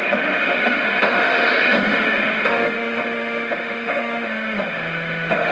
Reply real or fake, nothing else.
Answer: fake